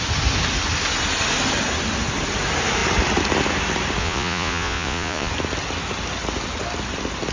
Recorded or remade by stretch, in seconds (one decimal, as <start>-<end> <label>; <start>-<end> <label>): 0.0-4.0 recorded; 4.0-5.3 remade; 5.3-7.3 recorded